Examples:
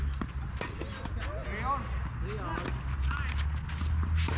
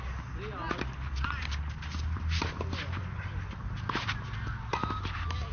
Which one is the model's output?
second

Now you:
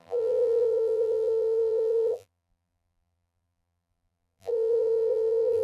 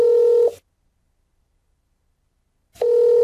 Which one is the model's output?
first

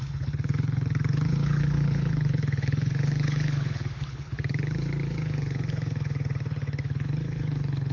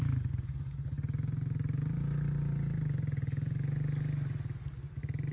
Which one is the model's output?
first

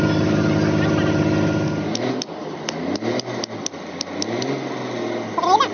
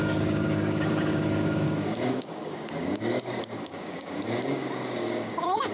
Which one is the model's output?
second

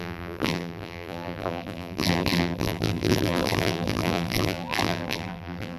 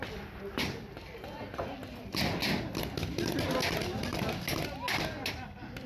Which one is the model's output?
first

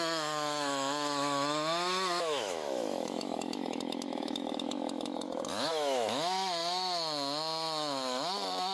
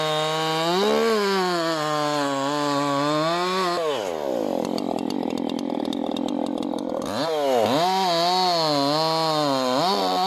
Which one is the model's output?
first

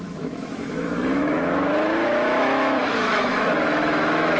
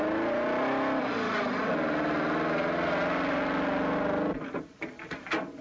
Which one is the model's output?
first